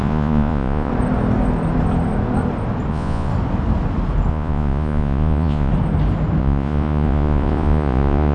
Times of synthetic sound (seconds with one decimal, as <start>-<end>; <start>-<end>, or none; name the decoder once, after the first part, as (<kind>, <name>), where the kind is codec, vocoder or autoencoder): 0.0-0.9 (vocoder, Vocos); 2.9-3.3; 4.3-5.7; 6.4-8.3